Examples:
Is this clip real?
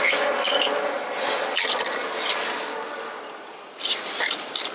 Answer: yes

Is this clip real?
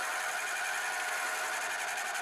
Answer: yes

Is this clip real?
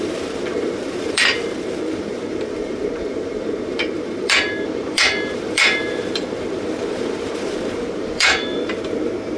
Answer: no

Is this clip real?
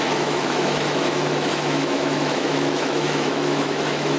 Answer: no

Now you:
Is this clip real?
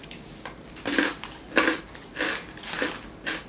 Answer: yes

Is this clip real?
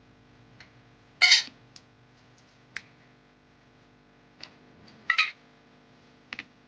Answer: yes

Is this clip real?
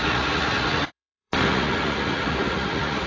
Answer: no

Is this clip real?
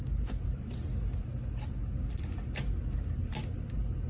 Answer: yes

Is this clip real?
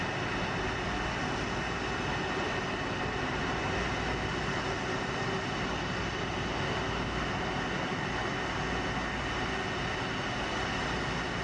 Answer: yes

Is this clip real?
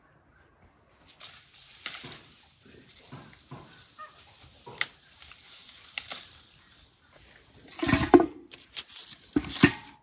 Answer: yes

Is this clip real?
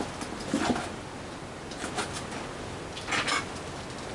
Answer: yes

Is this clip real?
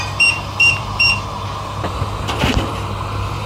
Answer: no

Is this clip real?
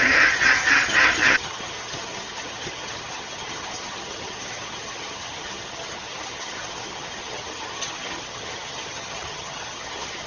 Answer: no